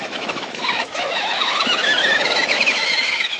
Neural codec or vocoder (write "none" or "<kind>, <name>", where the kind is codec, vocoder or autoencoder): autoencoder, DAC-VAE